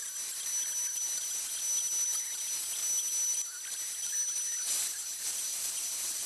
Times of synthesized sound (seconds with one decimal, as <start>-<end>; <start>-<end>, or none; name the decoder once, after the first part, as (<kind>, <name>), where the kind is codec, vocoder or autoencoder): none